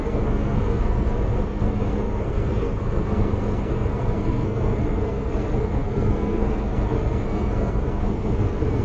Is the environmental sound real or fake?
fake